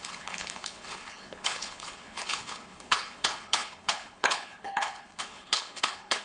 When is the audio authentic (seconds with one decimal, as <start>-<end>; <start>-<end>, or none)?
none